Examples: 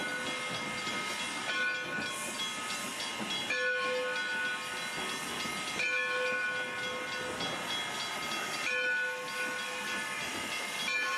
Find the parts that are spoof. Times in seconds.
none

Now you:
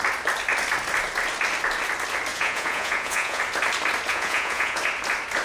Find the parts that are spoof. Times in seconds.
2.3-3.4 (vocoder, Vocos); 4.1-4.8

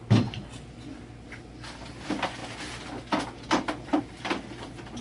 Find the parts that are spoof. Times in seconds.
none